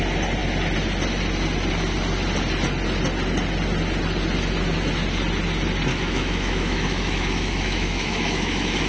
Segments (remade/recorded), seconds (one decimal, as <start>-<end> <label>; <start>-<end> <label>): 0.0-5.9 recorded; 5.9-8.9 remade